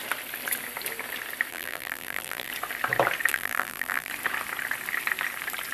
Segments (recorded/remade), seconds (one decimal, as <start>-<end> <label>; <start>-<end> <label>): 0.0-1.5 recorded; 1.5-2.5 remade; 2.5-3.3 recorded; 3.3-4.1 remade; 4.1-5.7 recorded